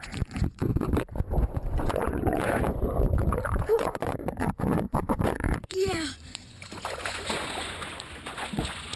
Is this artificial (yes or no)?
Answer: yes